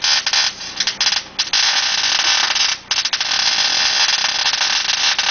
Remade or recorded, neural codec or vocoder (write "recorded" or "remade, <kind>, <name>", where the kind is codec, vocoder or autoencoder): recorded